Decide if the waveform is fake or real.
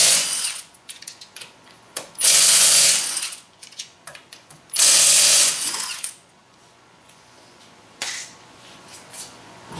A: fake